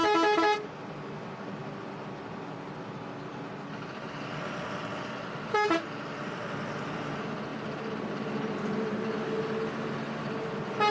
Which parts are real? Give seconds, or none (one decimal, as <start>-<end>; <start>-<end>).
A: 0.0-10.9